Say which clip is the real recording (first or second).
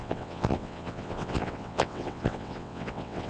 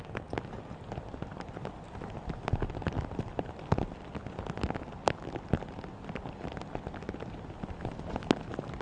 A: second